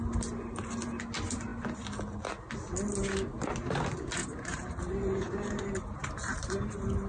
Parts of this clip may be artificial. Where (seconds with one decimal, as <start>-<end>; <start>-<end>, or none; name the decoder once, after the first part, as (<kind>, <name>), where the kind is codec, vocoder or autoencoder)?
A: 4.2-7.1 (vocoder, BigVGAN v2)